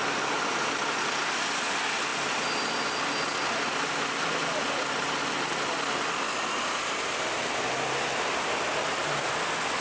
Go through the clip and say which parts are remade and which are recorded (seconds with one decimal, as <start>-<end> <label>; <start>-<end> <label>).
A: 0.0-9.8 recorded